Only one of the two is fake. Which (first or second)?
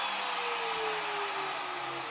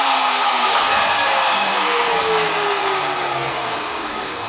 second